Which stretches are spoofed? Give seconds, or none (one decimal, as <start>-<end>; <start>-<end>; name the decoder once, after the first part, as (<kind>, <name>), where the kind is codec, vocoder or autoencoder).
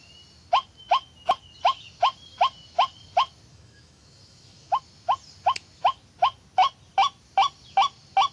3.5-4.8 (autoencoder, DAC-VAE)